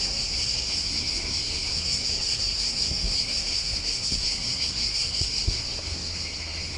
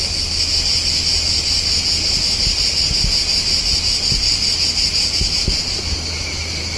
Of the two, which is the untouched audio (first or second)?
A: second